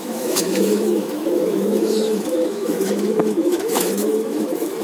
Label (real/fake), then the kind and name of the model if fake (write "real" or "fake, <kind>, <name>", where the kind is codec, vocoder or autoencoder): fake, autoencoder, DAC-VAE